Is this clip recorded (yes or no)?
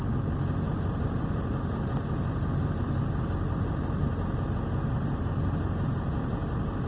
yes